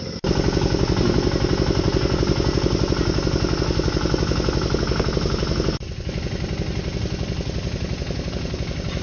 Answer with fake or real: real